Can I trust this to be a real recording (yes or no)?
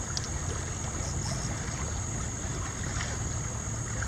yes